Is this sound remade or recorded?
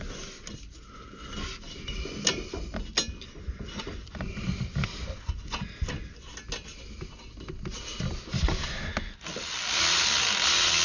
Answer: recorded